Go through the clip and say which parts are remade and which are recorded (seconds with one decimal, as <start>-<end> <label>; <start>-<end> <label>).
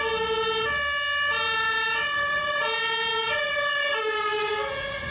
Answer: 0.0-5.1 recorded